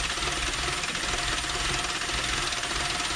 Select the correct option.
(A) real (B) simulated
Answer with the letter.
A